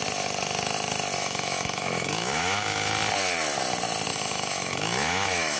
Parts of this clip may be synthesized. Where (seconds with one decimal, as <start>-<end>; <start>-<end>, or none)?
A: 1.2-2.9; 4.1-5.6